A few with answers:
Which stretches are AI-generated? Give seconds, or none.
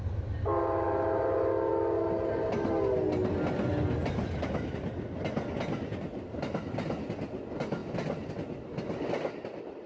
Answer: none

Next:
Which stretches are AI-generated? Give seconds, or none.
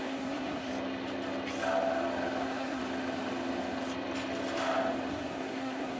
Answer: 0.0-0.7 (codec, SNAC); 2.4-2.8; 5.1-6.0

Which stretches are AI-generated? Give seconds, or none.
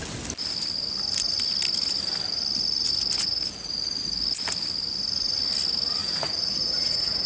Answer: 6.0-7.3 (vocoder, Vocos)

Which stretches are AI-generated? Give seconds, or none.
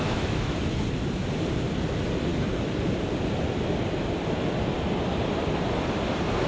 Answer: 0.0-0.8 (autoencoder, DAC-VAE)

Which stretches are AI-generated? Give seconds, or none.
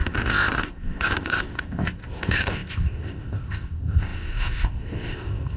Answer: 0.0-5.6 (codec, ZipCodec)